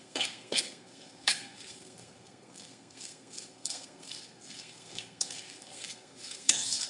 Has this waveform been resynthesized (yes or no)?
yes